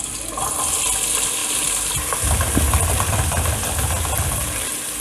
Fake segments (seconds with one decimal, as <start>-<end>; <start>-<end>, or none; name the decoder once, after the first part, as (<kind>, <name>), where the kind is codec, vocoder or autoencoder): none